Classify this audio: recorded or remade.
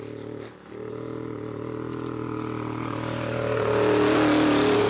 recorded